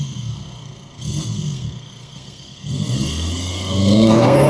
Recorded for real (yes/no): no